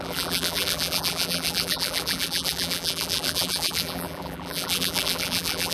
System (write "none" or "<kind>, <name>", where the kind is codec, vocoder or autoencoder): vocoder, BigVGAN v2